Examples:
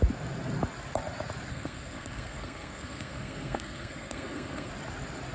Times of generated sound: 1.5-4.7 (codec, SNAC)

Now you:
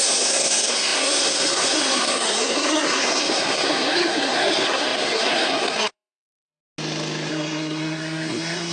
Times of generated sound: 0.0-6.6 (codec, SNAC); 7.3-8.7

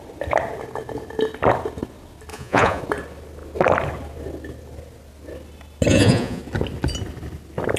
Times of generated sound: 2.3-2.8 (vocoder, Vocos); 5.9-6.4

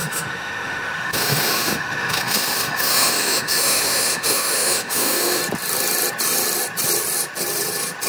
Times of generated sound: 0.0-5.4 (autoencoder, DAC-VAE)

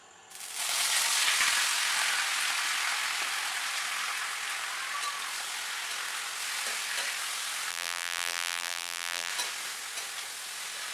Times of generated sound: 7.7-9.3 (vocoder, BigVGAN v2)

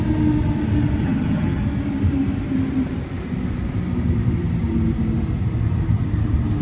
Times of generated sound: 1.0-1.6 (vocoder, HiFi-GAN)

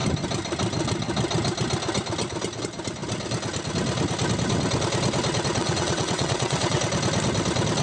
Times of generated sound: 5.6-6.8 (vocoder, WaveNeXt)

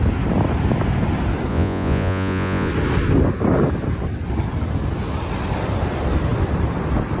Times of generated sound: 1.5-2.7 (vocoder, Vocos)